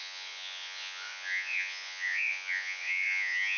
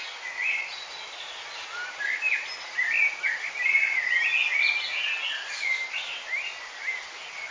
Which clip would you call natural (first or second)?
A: second